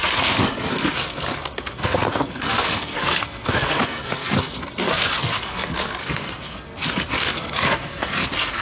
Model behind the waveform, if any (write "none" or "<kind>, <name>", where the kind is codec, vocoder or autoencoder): codec, SNAC